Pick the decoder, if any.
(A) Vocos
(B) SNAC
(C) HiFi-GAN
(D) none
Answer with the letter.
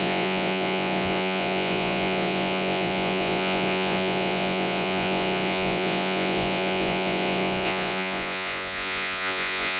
A